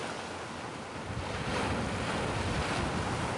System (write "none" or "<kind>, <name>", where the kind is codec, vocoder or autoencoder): none